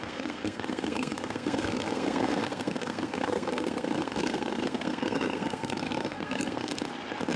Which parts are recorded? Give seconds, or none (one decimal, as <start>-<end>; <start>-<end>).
6.7-7.4